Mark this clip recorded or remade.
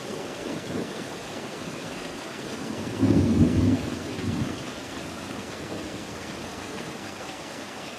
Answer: remade